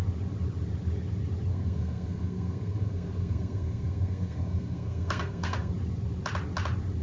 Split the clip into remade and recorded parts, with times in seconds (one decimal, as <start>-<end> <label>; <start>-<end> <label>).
0.0-1.5 recorded; 1.5-5.7 remade; 5.7-7.0 recorded